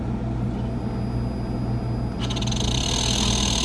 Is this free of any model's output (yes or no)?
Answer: yes